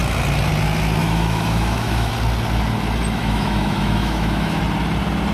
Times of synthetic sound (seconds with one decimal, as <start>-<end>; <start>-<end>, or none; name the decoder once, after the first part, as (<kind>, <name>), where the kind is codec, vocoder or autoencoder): 1.0-2.1 (autoencoder, DAC-VAE); 3.2-4.6